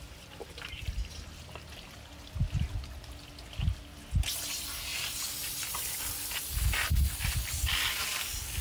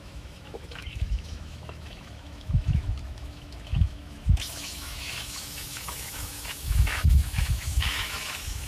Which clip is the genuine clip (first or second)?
first